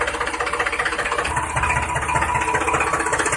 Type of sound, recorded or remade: recorded